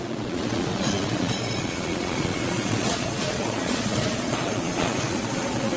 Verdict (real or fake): fake